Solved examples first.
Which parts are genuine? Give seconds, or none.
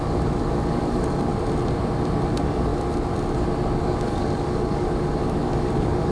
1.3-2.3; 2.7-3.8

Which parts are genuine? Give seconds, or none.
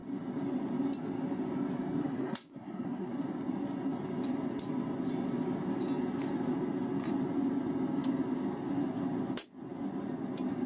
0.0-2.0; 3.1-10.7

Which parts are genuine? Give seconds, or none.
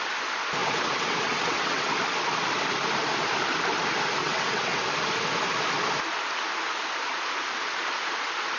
0.0-0.6; 1.9-4.2; 4.8-8.6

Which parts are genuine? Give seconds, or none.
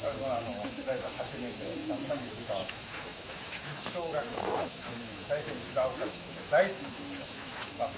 none